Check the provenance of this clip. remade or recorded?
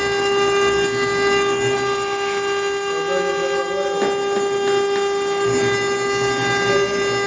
recorded